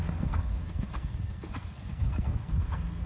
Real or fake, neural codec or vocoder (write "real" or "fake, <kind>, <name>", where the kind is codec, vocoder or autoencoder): fake, codec, SNAC